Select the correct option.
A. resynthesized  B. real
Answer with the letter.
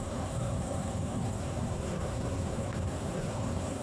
A